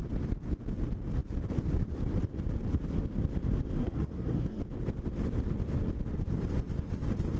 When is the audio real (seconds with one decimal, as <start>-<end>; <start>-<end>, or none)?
0.0-3.8; 4.6-7.4